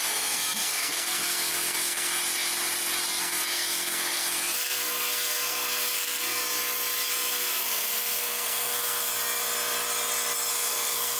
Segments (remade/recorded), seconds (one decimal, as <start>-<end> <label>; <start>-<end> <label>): 0.0-2.2 remade; 2.2-3.2 recorded; 3.2-6.4 remade; 6.4-7.1 recorded; 7.1-9.1 remade; 9.1-10.5 recorded; 10.5-11.2 remade